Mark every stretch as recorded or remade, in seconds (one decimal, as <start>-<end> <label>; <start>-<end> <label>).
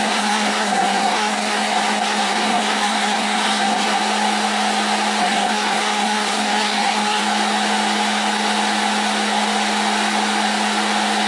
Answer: 0.0-4.0 remade; 4.0-5.2 recorded; 5.2-7.2 remade; 7.2-11.3 recorded